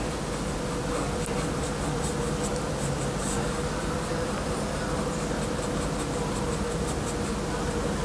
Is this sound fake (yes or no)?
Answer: no